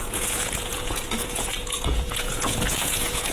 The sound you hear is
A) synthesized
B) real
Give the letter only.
A